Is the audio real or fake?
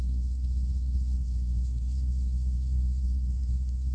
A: fake